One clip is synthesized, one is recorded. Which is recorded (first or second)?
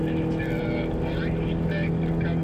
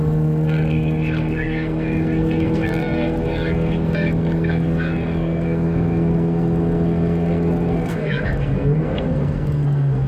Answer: first